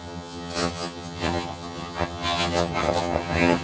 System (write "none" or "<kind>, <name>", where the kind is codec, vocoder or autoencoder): vocoder, HiFi-GAN